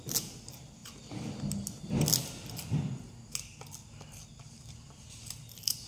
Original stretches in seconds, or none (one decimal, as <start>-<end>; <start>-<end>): 0.0-5.9